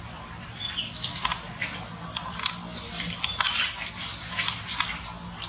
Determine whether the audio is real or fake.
real